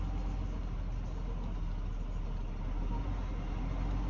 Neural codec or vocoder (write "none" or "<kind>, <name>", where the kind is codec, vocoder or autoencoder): none